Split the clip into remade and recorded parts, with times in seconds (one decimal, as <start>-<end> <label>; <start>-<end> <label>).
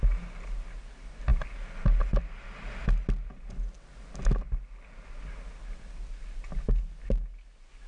0.0-7.9 recorded